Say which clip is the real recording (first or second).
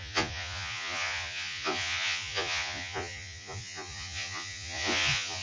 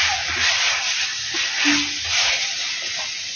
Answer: second